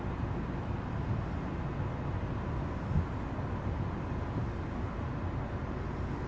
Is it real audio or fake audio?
real